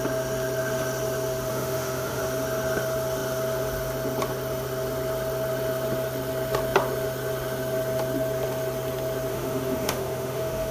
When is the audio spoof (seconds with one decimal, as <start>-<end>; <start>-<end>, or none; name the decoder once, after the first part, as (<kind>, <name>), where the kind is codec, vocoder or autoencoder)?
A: 1.5-2.2 (autoencoder, DAC-VAE); 9.3-10.7